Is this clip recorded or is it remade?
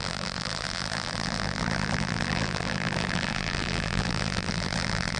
remade